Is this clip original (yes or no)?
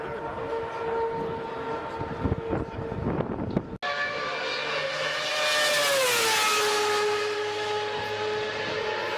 yes